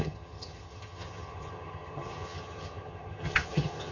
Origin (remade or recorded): remade